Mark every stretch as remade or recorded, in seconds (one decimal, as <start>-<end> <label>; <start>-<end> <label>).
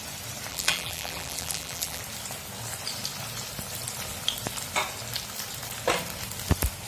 0.0-0.5 recorded; 0.5-2.0 remade; 2.0-6.9 recorded